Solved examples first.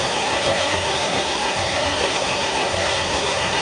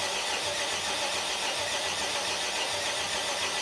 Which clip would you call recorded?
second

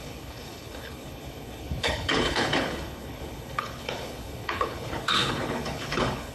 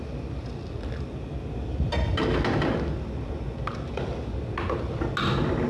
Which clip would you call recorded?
second